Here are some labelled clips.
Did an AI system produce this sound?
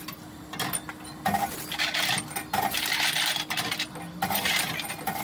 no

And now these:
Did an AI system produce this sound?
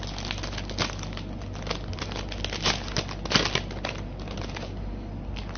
no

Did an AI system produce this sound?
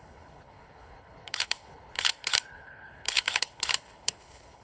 yes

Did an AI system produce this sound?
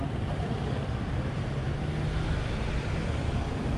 no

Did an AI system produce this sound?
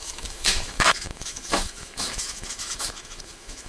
yes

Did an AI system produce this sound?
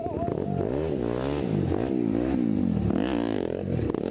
no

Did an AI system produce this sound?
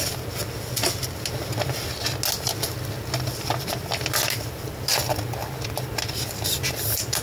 no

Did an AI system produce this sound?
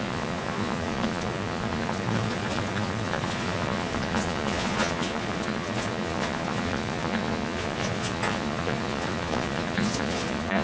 yes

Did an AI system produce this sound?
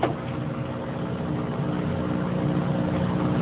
no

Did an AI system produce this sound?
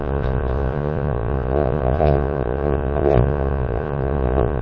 yes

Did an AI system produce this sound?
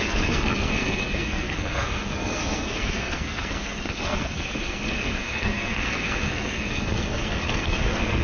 yes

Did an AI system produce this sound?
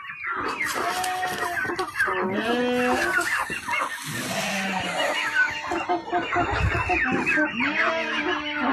no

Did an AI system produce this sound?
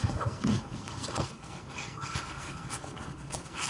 yes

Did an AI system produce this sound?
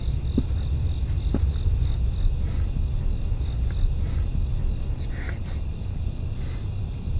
no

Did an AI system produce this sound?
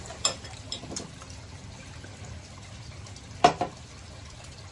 no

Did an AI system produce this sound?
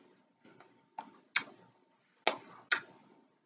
no